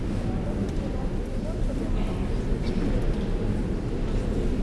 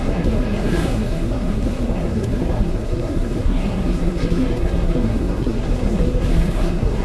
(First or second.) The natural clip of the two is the first